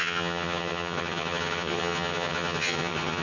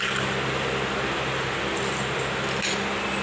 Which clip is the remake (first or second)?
first